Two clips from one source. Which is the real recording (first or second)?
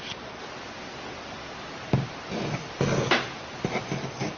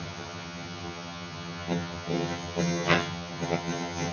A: first